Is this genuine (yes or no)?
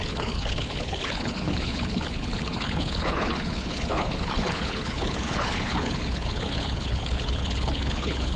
no